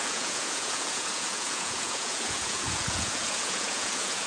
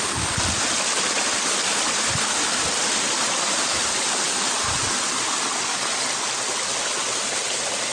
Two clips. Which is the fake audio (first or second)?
first